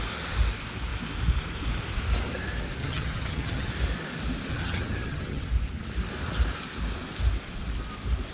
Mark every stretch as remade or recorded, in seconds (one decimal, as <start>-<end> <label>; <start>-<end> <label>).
0.0-2.8 recorded; 2.8-3.7 remade; 3.7-4.5 recorded; 4.5-5.5 remade; 5.5-8.3 recorded